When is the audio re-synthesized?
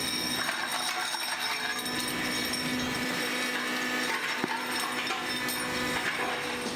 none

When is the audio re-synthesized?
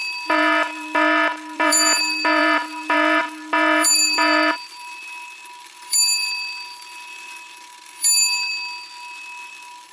0.0-8.5 (vocoder, BigVGAN v2); 9.5-9.9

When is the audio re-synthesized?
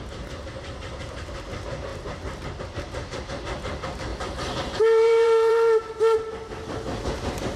1.9-2.6 (vocoder, BigVGAN v2); 4.1-6.2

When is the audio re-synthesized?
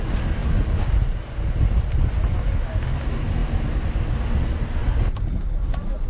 none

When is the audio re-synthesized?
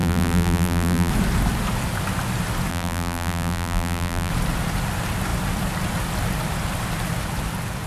0.0-1.1 (vocoder, BigVGAN v2); 2.7-4.3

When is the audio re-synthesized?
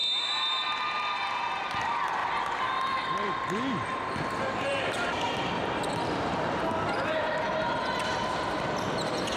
2.2-7.4 (vocoder, BigVGAN v2)